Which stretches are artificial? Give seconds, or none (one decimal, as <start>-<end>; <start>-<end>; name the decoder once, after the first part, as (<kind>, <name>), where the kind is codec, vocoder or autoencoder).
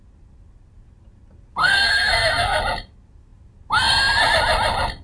1.6-2.6 (codec, SNAC)